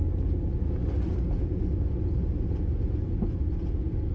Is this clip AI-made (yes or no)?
no